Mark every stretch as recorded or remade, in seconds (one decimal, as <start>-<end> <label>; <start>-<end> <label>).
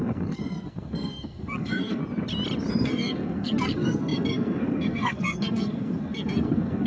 0.0-2.0 remade; 2.0-2.7 recorded; 2.7-6.9 remade